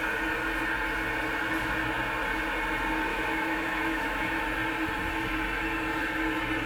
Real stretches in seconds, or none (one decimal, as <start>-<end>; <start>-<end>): 0.0-3.1; 4.4-6.7